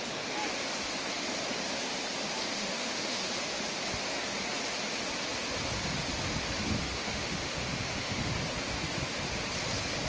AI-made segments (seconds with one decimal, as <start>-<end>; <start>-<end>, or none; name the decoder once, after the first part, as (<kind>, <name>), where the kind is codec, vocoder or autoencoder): 2.5-3.2 (autoencoder, DAC-VAE); 6.8-8.3